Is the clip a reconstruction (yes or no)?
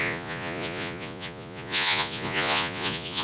yes